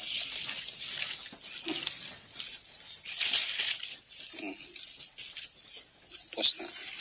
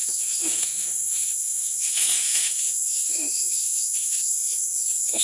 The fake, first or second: second